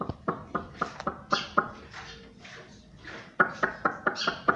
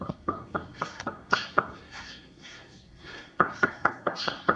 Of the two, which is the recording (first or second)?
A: first